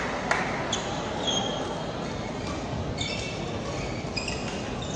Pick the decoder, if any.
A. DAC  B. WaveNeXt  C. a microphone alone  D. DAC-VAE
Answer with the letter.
C